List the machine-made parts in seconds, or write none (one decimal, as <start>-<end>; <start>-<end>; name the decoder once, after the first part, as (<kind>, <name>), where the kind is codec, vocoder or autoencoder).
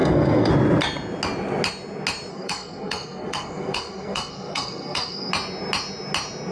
0.0-0.5 (codec, SNAC); 2.3-5.3